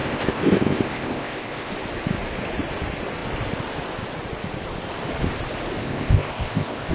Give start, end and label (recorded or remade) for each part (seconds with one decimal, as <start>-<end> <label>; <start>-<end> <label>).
0.0-1.7 remade; 1.7-5.8 recorded; 5.8-6.9 remade